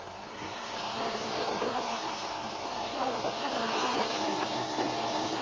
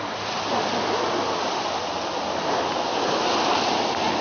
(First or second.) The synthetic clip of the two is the first